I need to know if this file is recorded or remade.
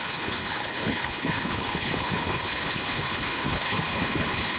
remade